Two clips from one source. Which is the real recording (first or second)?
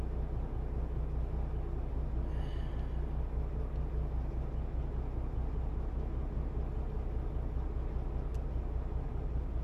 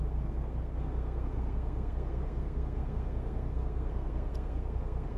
first